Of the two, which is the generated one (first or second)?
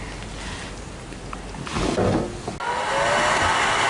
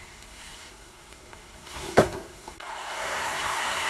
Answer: second